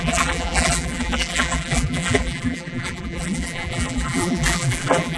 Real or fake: fake